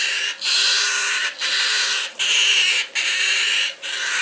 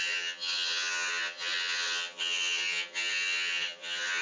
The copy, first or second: second